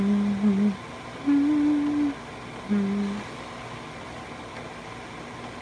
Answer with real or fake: real